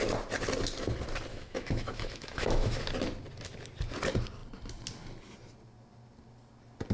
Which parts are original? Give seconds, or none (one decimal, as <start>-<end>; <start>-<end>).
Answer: 0.0-1.3; 2.8-6.9